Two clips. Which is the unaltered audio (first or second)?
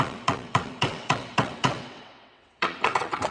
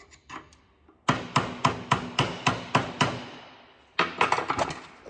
second